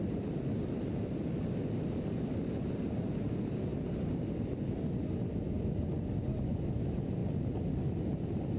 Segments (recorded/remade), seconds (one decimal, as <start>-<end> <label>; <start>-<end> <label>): 0.0-8.6 recorded